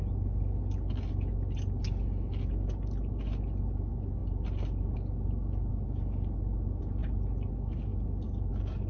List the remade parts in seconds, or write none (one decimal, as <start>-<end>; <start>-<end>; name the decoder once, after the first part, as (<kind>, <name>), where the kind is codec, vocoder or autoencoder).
none